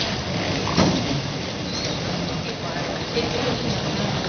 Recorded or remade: recorded